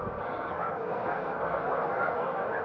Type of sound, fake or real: fake